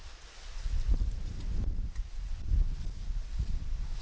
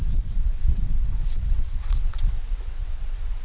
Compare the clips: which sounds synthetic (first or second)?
second